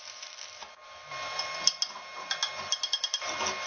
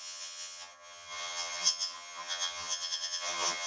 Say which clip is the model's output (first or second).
second